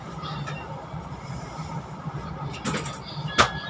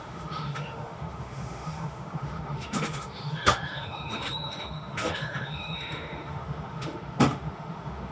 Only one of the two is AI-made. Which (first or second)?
second